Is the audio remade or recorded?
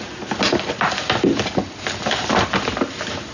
recorded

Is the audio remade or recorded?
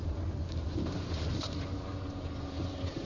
remade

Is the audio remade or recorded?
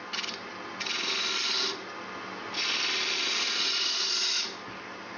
recorded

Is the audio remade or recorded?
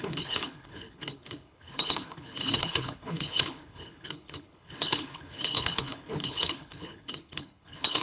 remade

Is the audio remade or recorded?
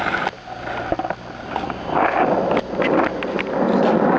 recorded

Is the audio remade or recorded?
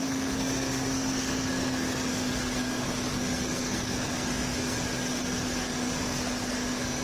remade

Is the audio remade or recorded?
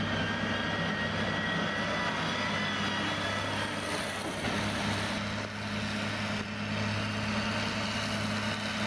recorded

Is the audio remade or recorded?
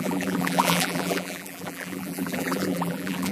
remade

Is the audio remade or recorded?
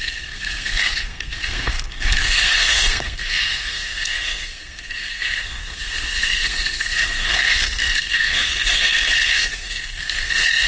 remade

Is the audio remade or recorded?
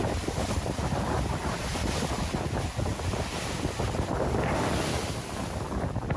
recorded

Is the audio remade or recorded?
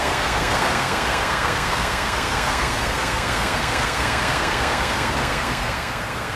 remade